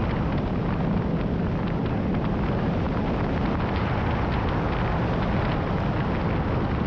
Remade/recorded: recorded